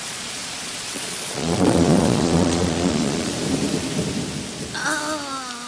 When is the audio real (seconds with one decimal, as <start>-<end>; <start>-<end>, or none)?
3.3-5.7